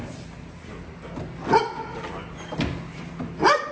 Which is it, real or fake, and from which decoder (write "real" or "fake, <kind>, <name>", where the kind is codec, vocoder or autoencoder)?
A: real